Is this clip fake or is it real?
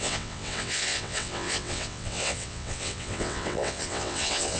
fake